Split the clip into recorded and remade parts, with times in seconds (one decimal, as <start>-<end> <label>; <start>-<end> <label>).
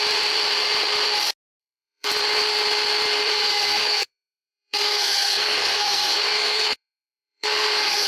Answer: 0.0-1.6 recorded; 1.6-2.1 remade; 2.1-3.3 recorded; 3.3-8.1 remade